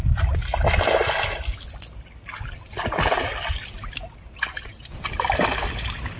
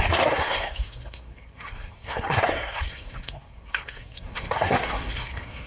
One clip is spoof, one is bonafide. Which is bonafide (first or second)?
first